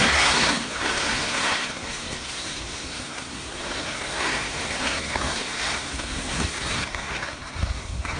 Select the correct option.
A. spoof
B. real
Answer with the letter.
A